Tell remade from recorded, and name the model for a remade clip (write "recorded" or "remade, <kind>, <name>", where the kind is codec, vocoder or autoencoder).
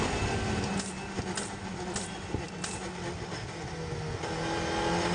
recorded